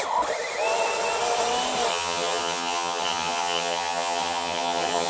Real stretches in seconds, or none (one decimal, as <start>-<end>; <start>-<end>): 0.0-1.9